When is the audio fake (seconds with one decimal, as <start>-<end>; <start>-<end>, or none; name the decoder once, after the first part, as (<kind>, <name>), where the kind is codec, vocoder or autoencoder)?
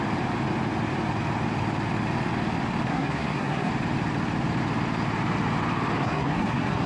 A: 2.9-3.7 (codec, SNAC); 6.0-6.9